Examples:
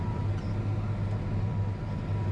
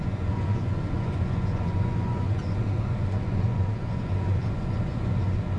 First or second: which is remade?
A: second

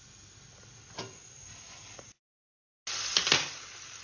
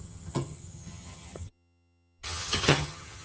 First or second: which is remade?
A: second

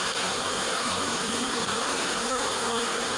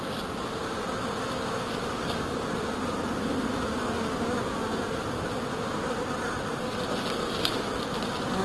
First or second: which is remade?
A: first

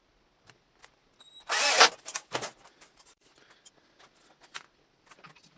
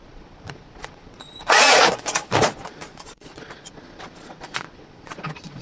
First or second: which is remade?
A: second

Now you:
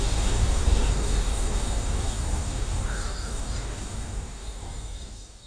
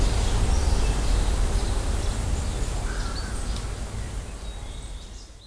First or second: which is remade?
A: first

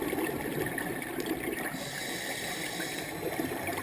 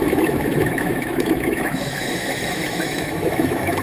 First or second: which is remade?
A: second